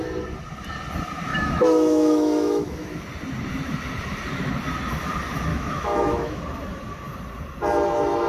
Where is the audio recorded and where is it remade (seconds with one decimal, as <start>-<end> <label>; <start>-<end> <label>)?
0.0-1.3 recorded; 1.3-3.0 remade; 3.0-5.5 recorded; 5.5-6.4 remade; 6.4-8.3 recorded